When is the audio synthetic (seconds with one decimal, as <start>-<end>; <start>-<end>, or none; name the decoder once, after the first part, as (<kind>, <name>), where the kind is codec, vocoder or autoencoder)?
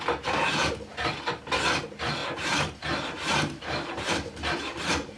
2.2-4.8 (vocoder, BigVGAN v2)